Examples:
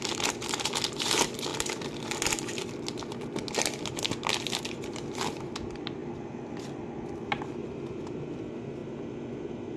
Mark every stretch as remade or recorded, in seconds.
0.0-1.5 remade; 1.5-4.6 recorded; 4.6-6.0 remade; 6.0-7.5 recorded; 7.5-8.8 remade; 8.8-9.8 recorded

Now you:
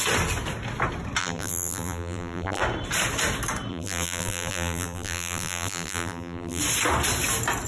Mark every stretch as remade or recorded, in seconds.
0.0-1.2 recorded; 1.2-2.6 remade; 2.6-3.7 recorded; 3.7-6.6 remade; 6.6-7.7 recorded

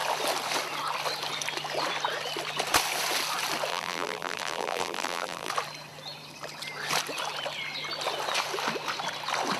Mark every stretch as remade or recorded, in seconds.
0.0-3.7 recorded; 3.7-5.5 remade; 5.5-9.6 recorded